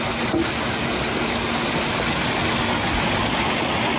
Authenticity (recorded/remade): recorded